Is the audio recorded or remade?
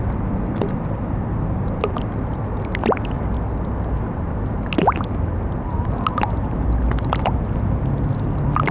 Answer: recorded